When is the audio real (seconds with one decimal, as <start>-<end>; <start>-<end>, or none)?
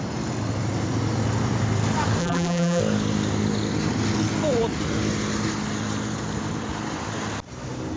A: 0.0-2.2; 2.8-8.0